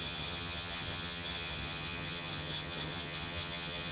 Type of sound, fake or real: fake